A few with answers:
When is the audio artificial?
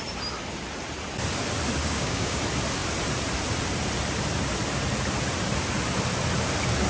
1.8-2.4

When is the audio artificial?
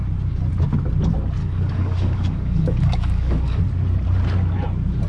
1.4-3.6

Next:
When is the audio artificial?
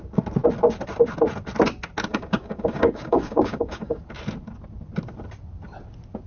2.1-4.0